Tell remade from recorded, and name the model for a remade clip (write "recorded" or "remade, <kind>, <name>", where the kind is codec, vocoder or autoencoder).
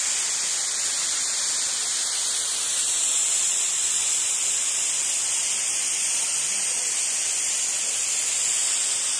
recorded